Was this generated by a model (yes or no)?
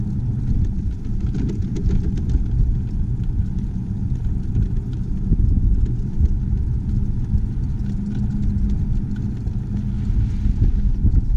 no